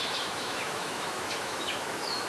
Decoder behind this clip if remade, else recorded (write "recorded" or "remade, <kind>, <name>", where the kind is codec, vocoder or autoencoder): remade, autoencoder, DAC-VAE